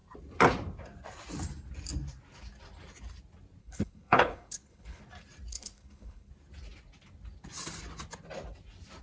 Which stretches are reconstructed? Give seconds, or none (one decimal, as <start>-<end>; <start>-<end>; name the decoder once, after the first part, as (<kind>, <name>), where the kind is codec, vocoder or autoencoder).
3.6-5.0 (codec, HILCodec); 5.5-6.3

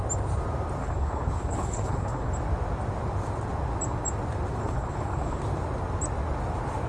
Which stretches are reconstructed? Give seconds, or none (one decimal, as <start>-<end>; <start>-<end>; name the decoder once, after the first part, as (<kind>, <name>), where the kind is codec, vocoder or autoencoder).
0.8-2.3 (codec, HILCodec); 4.6-5.4

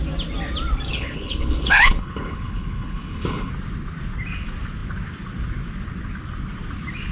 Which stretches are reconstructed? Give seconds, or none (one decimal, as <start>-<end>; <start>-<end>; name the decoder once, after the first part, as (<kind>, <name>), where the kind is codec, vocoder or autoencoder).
0.9-3.5 (codec, HILCodec)

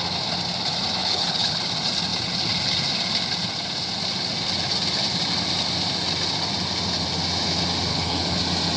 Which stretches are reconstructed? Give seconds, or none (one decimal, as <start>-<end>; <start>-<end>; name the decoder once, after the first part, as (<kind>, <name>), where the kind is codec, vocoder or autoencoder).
1.0-1.6 (codec, HILCodec); 7.9-8.4

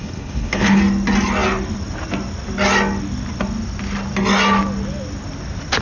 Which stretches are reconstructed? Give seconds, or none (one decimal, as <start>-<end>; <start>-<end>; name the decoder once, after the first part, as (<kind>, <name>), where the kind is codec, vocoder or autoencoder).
0.0-0.8 (codec, HILCodec)

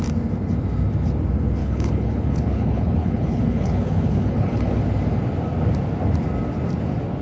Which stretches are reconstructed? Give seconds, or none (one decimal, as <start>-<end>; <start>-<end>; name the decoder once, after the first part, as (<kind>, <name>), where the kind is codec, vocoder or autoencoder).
1.6-4.8 (codec, HILCodec)

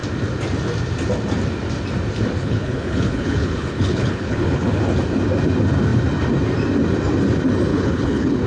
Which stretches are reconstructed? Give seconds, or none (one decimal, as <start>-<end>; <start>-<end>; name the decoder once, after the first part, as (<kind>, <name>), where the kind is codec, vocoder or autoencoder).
2.4-4.8 (codec, HILCodec); 7.7-8.5

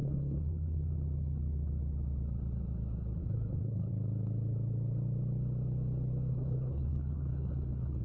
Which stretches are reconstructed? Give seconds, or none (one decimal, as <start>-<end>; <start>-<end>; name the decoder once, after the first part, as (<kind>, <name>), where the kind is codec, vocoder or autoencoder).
0.0-0.9 (codec, HILCodec); 3.2-3.9; 6.3-8.0